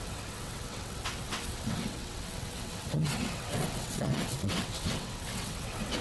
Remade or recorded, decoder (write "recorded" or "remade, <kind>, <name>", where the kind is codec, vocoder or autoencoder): remade, vocoder, WaveNeXt